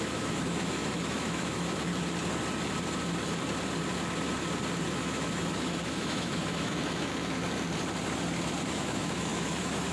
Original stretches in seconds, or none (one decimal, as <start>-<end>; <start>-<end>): 1.9-4.9; 7.1-8.7